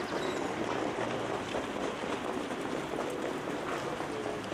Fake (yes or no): no